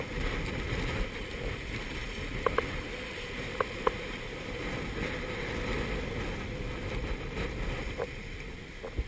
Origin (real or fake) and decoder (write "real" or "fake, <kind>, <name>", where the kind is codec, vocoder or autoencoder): real